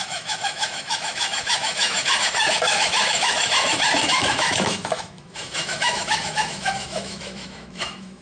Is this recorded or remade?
remade